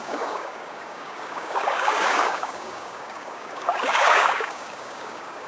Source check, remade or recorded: remade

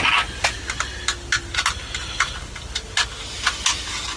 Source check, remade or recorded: recorded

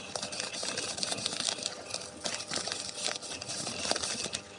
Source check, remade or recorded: recorded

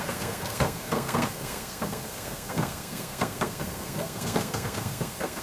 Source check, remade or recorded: remade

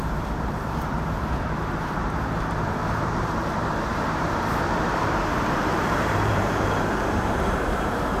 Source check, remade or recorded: remade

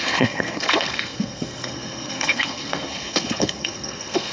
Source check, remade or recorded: remade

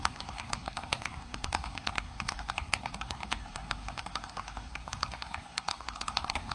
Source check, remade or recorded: remade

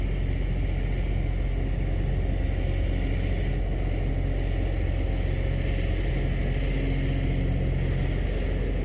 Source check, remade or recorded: recorded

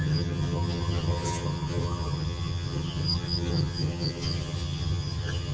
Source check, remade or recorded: remade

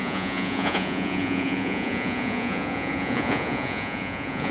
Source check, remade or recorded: remade